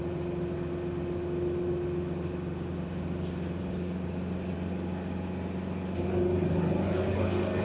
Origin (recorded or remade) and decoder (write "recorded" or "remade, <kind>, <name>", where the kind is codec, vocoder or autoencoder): recorded